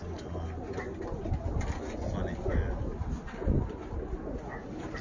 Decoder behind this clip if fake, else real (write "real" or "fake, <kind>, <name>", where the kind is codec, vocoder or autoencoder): real